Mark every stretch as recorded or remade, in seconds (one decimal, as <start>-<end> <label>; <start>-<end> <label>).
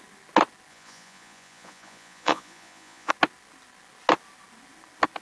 0.0-0.7 recorded; 0.7-3.1 remade; 3.1-5.2 recorded